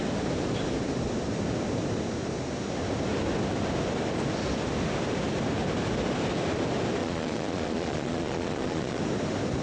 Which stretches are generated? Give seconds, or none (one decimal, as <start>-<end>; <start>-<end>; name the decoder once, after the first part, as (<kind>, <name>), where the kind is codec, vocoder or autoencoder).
7.0-9.0 (vocoder, Vocos)